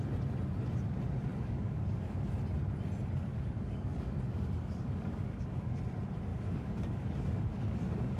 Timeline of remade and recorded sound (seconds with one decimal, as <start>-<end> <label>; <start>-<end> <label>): 0.0-1.3 recorded; 1.3-2.3 remade; 2.3-3.3 recorded; 3.3-5.8 remade; 5.8-6.3 recorded; 6.3-8.2 remade